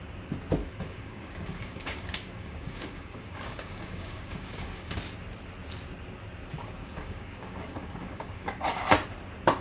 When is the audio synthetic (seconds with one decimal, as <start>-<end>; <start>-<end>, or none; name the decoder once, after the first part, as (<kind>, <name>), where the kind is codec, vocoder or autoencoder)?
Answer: 0.6-5.0 (codec, DAC); 6.6-8.8